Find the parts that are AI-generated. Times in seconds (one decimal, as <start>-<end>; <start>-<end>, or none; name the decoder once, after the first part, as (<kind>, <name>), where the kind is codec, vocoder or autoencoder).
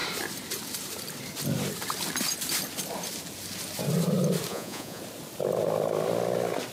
4.5-5.0 (vocoder, Vocos)